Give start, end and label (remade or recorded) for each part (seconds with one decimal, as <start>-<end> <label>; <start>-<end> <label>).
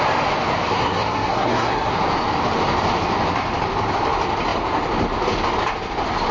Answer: 0.0-0.7 recorded; 0.7-1.9 remade; 1.9-6.3 recorded